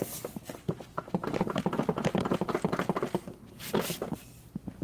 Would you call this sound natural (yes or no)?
yes